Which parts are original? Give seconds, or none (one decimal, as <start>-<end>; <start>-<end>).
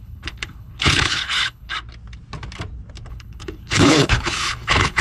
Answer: 1.7-3.1